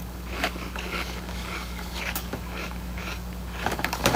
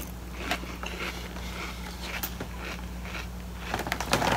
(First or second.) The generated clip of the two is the first